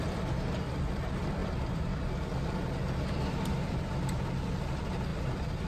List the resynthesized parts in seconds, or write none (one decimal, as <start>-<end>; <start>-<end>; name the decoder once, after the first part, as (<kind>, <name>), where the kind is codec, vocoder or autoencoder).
0.0-1.4 (vocoder, BigVGAN v2); 4.6-5.1